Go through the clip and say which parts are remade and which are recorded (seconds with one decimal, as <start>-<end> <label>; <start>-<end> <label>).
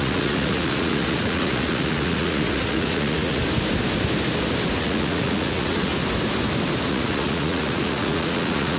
0.0-3.4 remade; 3.4-4.8 recorded; 4.8-5.9 remade; 5.9-6.9 recorded; 6.9-8.8 remade